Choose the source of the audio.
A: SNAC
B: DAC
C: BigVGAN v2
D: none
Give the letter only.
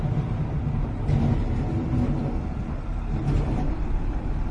D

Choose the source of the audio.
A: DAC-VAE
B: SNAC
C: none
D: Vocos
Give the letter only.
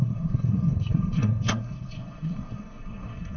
B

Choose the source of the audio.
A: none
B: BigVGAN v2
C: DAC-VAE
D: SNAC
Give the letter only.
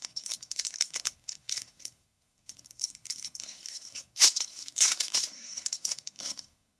D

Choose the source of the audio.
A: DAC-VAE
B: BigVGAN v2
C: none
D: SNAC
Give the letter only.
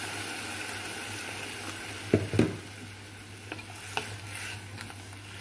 C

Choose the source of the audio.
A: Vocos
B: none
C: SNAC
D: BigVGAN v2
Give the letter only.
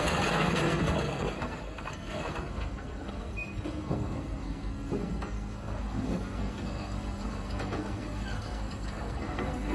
C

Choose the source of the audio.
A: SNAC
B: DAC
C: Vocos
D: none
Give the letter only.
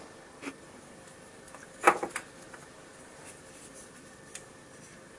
D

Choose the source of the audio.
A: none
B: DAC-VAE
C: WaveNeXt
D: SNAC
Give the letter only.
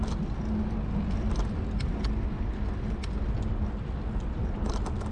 A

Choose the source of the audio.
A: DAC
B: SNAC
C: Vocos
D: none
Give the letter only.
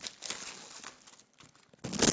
D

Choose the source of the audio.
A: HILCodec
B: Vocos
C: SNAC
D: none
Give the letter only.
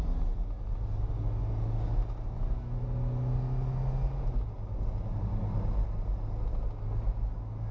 D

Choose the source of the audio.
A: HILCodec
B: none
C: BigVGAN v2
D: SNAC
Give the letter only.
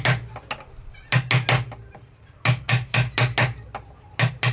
B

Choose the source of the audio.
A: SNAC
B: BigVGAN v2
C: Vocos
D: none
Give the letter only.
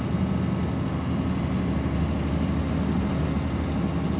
D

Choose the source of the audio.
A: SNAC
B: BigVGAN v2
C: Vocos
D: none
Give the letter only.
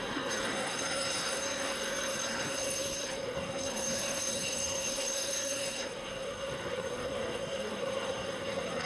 A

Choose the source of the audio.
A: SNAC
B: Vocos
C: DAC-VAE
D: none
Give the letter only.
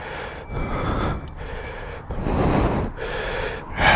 D